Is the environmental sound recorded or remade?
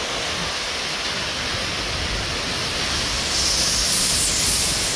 recorded